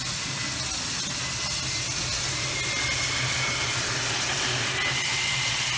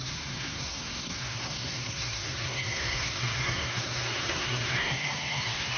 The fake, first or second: second